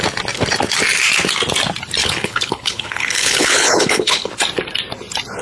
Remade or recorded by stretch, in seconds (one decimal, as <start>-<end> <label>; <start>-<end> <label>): 0.0-2.0 recorded; 2.0-4.3 remade; 4.3-5.4 recorded